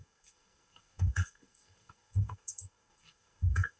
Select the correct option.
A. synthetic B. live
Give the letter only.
A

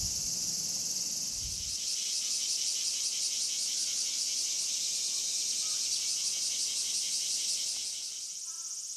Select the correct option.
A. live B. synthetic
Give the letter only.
A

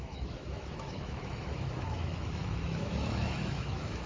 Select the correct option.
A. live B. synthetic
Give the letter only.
B